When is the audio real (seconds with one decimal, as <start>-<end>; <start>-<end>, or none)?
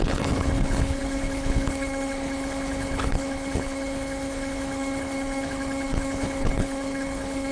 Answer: none